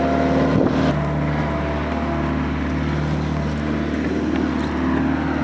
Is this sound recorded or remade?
recorded